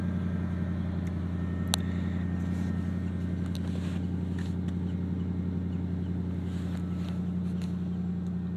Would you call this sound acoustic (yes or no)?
yes